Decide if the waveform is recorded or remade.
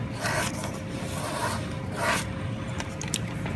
recorded